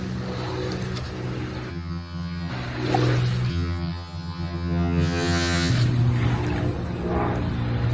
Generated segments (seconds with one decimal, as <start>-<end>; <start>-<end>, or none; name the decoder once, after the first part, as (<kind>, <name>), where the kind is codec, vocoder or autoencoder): 1.7-2.5 (vocoder, HiFi-GAN); 3.5-5.7